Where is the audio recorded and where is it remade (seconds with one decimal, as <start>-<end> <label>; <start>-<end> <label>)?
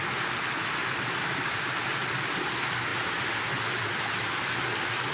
0.0-0.8 recorded; 0.8-1.7 remade; 1.7-5.1 recorded